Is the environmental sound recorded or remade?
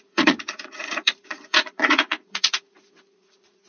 remade